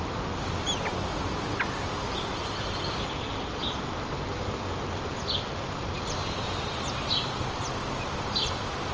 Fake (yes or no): no